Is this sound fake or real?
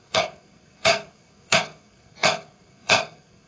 fake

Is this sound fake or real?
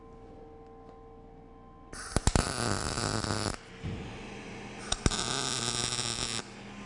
real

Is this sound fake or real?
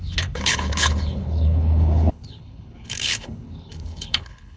fake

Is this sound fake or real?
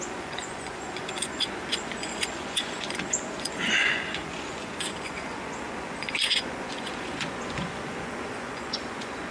fake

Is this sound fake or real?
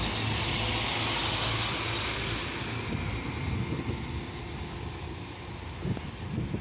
real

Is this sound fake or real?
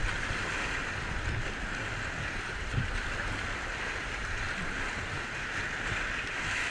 real